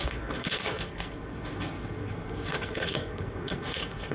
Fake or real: fake